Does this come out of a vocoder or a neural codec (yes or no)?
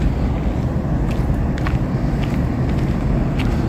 no